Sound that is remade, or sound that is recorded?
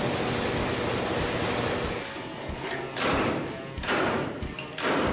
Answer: recorded